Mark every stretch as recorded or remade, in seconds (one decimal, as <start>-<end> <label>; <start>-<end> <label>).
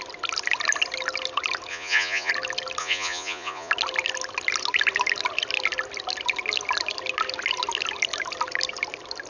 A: 0.0-1.7 recorded; 1.7-2.3 remade; 2.3-2.8 recorded; 2.8-3.7 remade; 3.7-9.3 recorded